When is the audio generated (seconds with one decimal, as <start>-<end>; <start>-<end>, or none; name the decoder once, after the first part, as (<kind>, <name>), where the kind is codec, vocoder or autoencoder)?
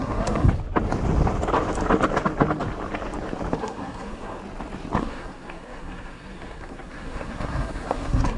0.0-0.5 (codec, SNAC); 3.6-4.4; 5.0-8.4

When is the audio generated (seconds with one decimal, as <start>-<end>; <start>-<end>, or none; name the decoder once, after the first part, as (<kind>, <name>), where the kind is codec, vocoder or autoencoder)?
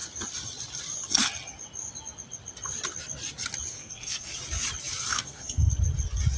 3.7-4.3 (codec, SNAC); 5.1-5.7